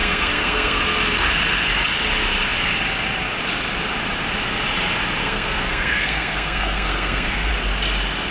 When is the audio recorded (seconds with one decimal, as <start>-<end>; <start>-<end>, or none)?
0.8-5.2; 7.5-8.3

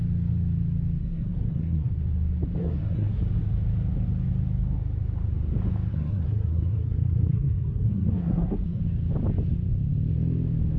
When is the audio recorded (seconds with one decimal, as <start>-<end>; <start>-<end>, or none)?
0.0-1.0; 1.9-2.6; 3.2-5.9; 8.8-10.8

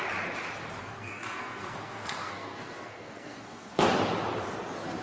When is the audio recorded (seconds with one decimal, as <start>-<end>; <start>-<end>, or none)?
0.0-0.8; 3.8-5.0